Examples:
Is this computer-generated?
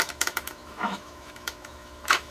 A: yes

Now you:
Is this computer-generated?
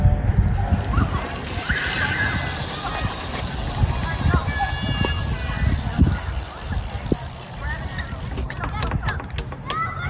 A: no